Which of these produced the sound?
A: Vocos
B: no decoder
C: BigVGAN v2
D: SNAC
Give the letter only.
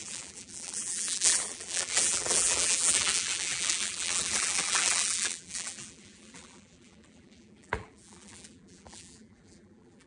C